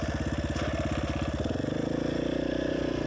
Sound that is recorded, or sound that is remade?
recorded